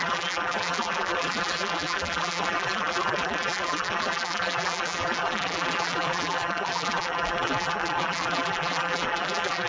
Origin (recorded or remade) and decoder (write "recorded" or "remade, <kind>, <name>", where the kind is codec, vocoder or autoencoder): remade, vocoder, BigVGAN v2